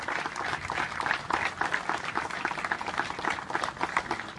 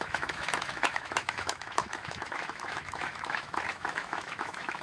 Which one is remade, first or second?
second